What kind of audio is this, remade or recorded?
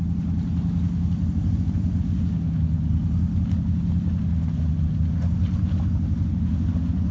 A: recorded